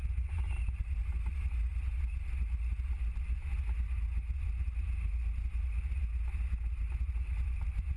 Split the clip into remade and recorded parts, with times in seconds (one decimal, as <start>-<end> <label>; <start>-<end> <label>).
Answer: 0.0-8.0 recorded